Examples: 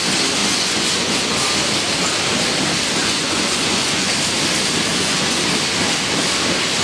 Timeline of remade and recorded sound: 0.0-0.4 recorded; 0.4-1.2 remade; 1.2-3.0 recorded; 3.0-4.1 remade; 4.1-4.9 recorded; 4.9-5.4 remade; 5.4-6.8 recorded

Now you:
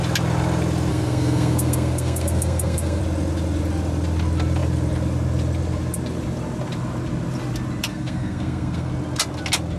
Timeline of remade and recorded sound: 0.0-0.9 recorded; 0.9-3.0 remade; 3.0-7.9 recorded; 7.9-8.9 remade; 8.9-9.8 recorded

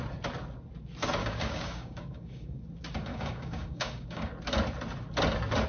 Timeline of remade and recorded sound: 0.0-1.2 recorded; 1.2-2.6 remade; 2.6-3.1 recorded; 3.1-4.3 remade; 4.3-5.7 recorded

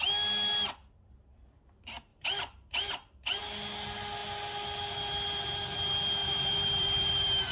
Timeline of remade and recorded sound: 0.0-2.1 recorded; 2.1-3.4 remade; 3.4-6.2 recorded; 6.2-7.1 remade; 7.1-7.5 recorded

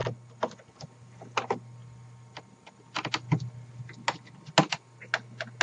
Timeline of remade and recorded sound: 0.0-5.6 recorded

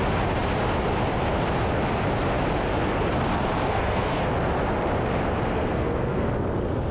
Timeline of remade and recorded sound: 0.0-3.7 recorded; 3.7-4.3 remade; 4.3-5.5 recorded; 5.5-6.3 remade; 6.3-6.9 recorded